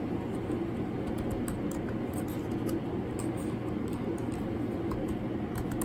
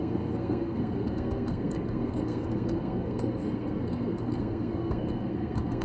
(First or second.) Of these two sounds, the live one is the first